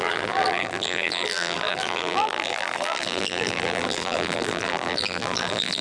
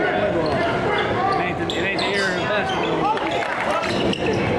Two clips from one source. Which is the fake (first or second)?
first